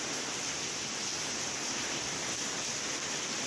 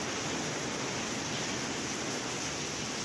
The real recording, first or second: second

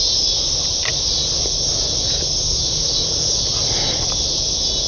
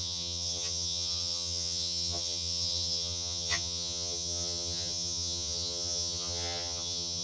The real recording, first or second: first